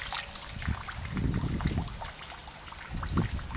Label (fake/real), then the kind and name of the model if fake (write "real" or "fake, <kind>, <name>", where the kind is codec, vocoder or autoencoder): real